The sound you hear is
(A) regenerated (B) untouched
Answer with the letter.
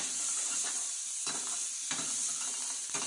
A